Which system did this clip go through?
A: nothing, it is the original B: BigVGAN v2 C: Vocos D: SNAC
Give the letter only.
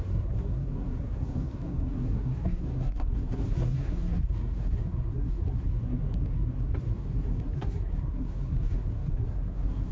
D